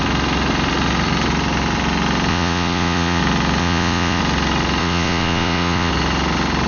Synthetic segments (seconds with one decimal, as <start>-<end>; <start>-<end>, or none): 2.3-3.2; 3.6-4.2; 4.8-5.9